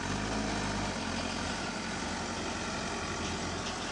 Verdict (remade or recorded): recorded